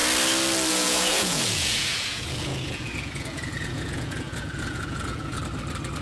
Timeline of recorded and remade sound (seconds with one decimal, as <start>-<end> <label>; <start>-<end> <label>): 0.0-0.7 recorded; 0.7-5.4 remade; 5.4-6.0 recorded